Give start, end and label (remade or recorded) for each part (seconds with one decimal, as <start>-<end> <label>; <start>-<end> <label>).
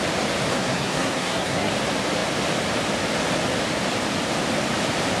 0.0-0.5 recorded; 0.5-1.7 remade; 1.7-5.2 recorded